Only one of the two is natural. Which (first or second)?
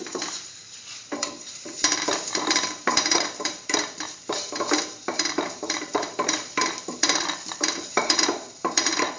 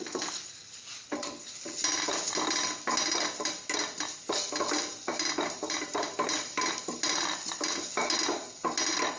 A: second